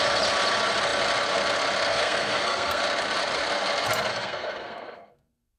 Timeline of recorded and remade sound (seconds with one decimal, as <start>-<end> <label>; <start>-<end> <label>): 0.0-1.9 recorded; 1.9-2.8 remade; 2.8-4.1 recorded; 4.1-5.6 remade

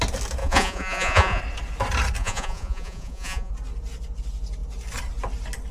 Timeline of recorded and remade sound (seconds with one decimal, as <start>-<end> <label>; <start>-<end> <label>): 0.0-0.4 recorded; 0.4-1.4 remade; 1.4-2.2 recorded; 2.2-3.5 remade; 3.5-5.7 recorded

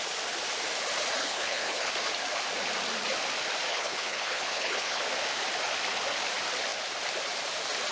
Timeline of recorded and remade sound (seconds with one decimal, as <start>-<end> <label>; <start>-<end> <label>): 0.0-1.2 recorded; 1.2-1.9 remade; 1.9-3.7 recorded; 3.7-5.0 remade; 5.0-7.9 recorded

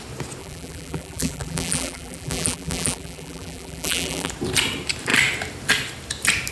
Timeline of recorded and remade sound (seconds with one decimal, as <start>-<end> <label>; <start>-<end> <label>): 0.0-0.4 recorded; 0.4-4.3 remade; 4.3-6.5 recorded

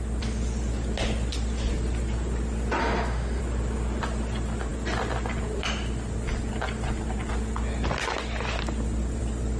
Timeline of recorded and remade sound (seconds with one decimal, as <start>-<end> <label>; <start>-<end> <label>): 0.0-2.8 recorded; 2.8-3.4 remade; 3.4-9.6 recorded

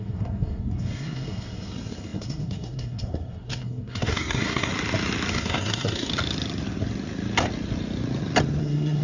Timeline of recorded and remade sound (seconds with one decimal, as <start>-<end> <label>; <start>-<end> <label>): 0.0-4.7 remade; 4.7-5.3 recorded; 5.3-6.1 remade; 6.1-8.6 recorded; 8.6-9.0 remade